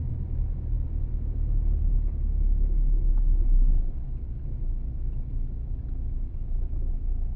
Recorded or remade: recorded